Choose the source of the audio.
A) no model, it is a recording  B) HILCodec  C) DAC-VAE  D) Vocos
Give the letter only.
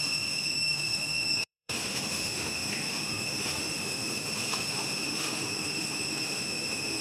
C